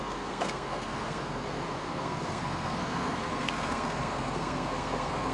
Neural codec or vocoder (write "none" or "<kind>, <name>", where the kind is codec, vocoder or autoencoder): codec, SNAC